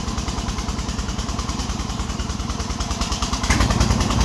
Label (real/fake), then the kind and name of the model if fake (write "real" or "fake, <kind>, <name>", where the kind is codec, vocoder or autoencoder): fake, vocoder, BigVGAN v2